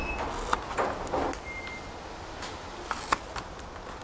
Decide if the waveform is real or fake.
real